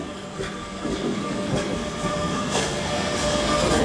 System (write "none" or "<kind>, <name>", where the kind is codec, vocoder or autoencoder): codec, SNAC